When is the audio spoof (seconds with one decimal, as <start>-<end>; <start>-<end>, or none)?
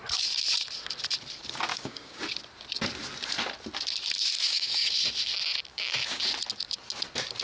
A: 1.7-2.2; 4.4-4.9; 5.7-6.2